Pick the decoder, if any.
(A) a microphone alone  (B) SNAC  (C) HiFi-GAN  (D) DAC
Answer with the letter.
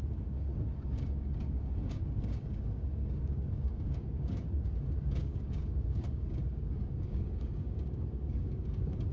D